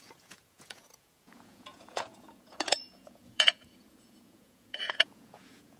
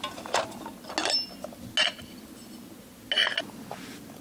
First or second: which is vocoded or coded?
first